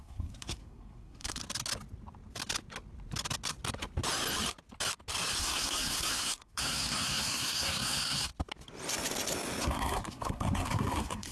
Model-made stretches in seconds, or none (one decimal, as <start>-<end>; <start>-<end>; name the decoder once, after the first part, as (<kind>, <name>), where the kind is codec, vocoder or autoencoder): 0.0-1.4 (codec, SNAC); 5.4-8.3; 9.6-11.3

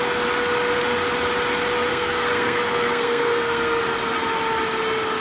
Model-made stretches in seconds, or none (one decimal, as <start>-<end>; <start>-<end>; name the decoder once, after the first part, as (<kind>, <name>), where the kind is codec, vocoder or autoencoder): 1.9-3.8 (codec, SNAC)

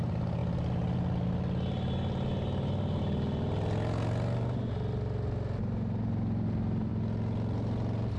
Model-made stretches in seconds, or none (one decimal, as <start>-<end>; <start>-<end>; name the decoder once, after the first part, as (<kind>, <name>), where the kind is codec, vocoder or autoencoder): none

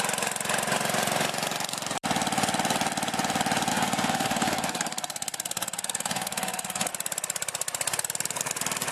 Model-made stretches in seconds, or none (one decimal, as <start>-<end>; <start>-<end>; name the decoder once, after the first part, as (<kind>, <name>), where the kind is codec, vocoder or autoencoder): 3.7-6.9 (codec, SNAC)

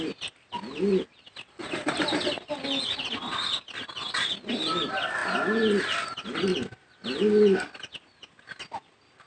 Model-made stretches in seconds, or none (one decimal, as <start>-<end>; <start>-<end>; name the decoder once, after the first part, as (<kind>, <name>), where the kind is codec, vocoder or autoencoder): none

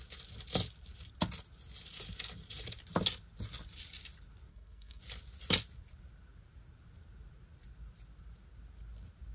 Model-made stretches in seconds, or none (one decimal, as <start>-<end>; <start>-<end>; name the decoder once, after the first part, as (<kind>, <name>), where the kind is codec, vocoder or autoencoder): 4.5-5.0 (codec, SNAC)

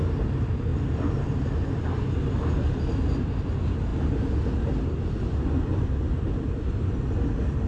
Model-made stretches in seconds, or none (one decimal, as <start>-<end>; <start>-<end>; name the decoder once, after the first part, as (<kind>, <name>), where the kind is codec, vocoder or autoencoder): none